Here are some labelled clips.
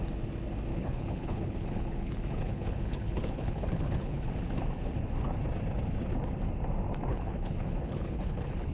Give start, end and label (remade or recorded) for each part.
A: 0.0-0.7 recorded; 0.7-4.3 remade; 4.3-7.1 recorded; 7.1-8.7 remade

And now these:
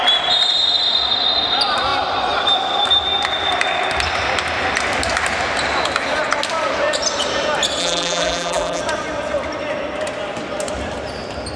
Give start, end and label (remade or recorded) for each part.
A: 0.0-7.8 recorded; 7.8-8.8 remade; 8.8-11.6 recorded

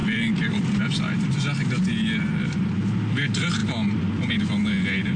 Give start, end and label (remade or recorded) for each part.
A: 0.0-0.8 remade; 0.8-3.6 recorded; 3.6-4.3 remade; 4.3-5.2 recorded

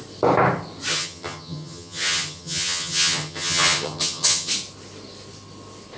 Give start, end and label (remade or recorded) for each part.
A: 0.0-0.9 recorded; 0.9-4.5 remade; 4.5-6.0 recorded